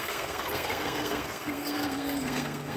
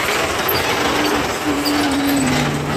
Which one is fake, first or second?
first